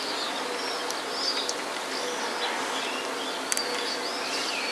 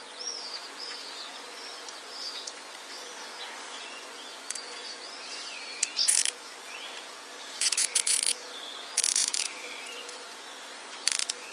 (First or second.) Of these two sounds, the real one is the first